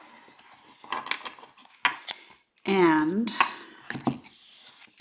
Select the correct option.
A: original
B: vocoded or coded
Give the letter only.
A